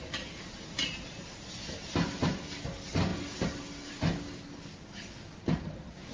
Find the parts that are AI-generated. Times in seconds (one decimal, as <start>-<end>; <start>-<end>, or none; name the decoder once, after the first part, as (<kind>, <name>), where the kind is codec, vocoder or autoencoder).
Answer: none